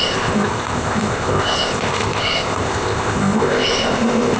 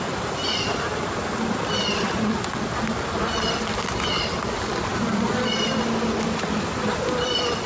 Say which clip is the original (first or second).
second